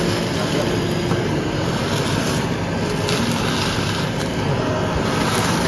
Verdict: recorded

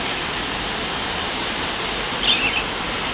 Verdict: recorded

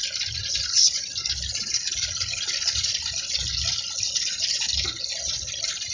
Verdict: recorded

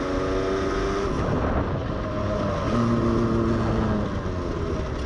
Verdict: recorded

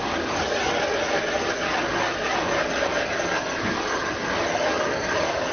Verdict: recorded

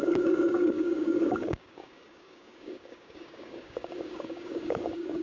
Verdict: remade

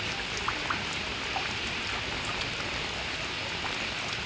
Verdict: recorded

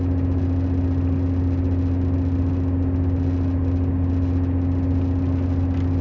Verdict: recorded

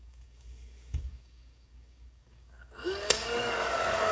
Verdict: remade